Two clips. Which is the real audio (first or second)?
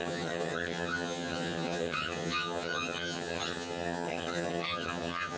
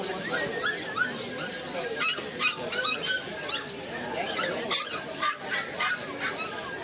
second